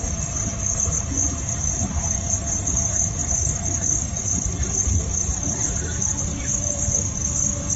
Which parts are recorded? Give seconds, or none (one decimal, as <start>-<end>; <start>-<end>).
3.2-4.2; 7.2-7.8